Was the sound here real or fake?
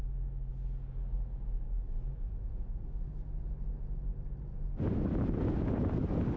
real